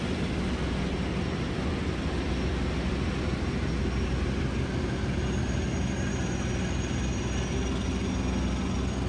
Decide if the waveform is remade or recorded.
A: recorded